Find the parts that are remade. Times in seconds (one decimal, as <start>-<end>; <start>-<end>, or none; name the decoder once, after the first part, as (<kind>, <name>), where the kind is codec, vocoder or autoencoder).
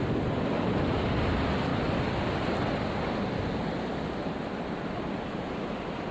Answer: none